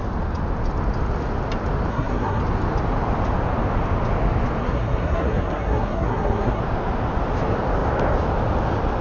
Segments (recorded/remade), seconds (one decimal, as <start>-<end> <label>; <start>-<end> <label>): 0.0-1.9 recorded; 1.9-2.4 remade; 2.4-4.6 recorded; 4.6-6.6 remade; 6.6-9.0 recorded